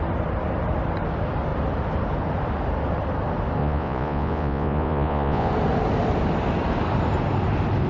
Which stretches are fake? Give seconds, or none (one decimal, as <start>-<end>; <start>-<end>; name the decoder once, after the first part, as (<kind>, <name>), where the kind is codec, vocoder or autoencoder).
3.6-5.5 (vocoder, Vocos)